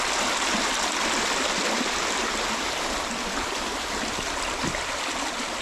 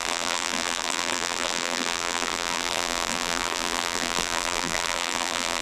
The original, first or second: first